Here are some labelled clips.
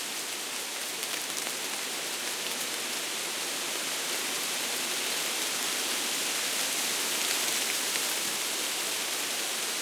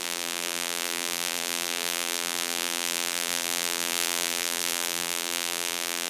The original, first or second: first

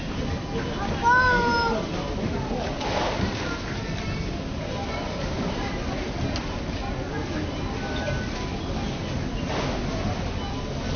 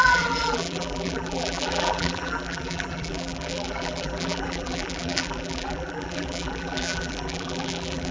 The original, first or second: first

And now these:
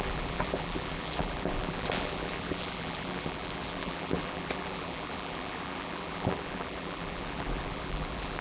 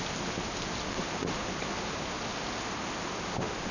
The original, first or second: second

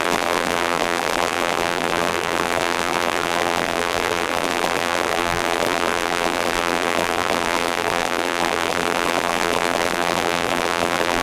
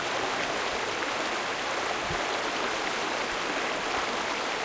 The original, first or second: second